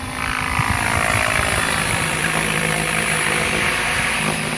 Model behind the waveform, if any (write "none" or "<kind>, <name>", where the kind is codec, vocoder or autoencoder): vocoder, BigVGAN v2